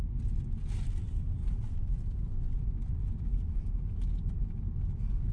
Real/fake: real